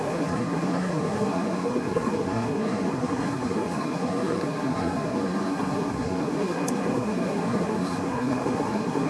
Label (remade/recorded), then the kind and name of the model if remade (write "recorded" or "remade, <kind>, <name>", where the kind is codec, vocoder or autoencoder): remade, codec, SNAC